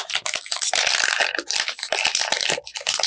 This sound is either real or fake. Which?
real